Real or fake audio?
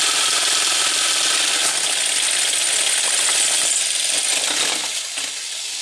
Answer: real